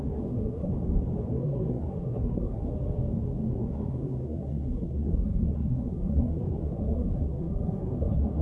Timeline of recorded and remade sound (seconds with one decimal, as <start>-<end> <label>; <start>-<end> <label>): 0.0-0.7 remade; 0.7-1.3 recorded; 1.3-2.7 remade; 2.7-3.5 recorded; 3.5-8.4 remade